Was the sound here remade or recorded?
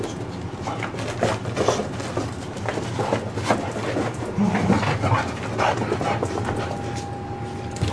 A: recorded